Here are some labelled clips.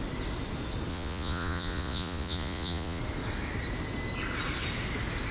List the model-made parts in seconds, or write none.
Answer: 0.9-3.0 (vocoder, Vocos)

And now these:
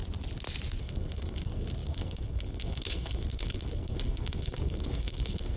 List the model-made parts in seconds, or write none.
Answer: 0.8-5.6 (codec, SNAC)

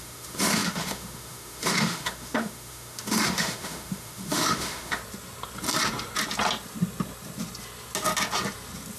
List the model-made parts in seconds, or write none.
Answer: 0.0-5.0 (autoencoder, DAC-VAE)

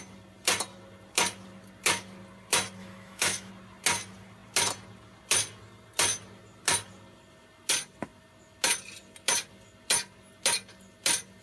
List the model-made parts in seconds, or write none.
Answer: 2.8-3.5 (autoencoder, DAC-VAE)